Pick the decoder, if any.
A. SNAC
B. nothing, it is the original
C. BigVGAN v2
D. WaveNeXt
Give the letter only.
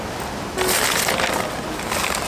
B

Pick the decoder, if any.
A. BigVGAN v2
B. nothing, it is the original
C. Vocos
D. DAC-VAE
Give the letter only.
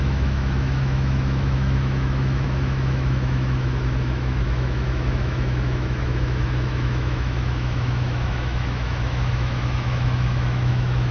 D